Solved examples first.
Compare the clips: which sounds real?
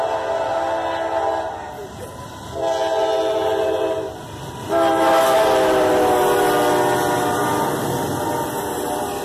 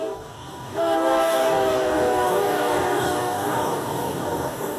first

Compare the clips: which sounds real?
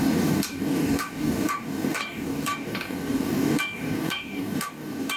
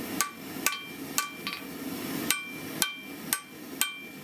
second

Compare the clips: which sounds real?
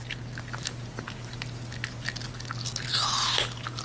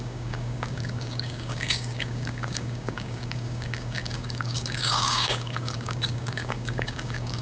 first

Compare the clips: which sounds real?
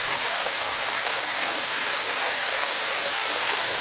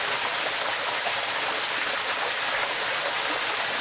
second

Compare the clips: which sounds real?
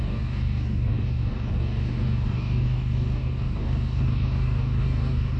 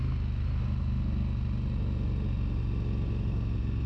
second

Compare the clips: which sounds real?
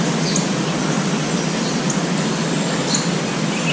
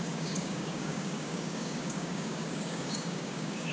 first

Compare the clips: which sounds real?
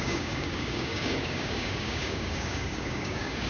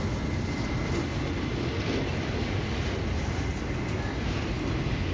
second